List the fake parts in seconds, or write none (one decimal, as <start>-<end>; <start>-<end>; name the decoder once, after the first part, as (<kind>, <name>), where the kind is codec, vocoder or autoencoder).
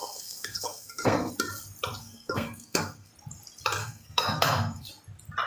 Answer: 0.0-1.3 (codec, SNAC); 2.0-3.1; 3.8-4.9